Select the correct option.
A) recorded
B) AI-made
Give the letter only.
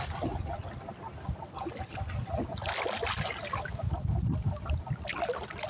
A